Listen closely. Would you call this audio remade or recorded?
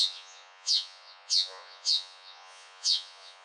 remade